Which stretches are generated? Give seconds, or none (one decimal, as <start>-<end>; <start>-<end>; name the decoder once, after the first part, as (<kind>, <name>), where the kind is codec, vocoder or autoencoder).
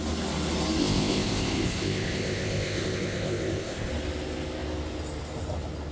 0.8-3.9 (codec, ZipCodec)